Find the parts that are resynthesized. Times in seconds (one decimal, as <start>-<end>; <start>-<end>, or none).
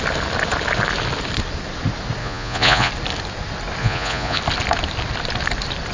2.2-2.9; 3.8-4.4